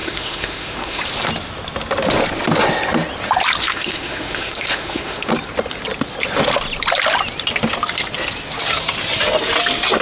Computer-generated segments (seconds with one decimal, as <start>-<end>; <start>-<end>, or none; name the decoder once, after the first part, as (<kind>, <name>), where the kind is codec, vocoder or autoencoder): 0.0-1.0 (autoencoder, DAC-VAE); 3.6-5.3